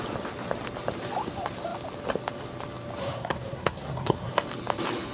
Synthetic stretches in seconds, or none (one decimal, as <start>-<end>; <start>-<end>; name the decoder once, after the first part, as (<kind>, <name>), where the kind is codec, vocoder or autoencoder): 3.0-4.3 (codec, SNAC)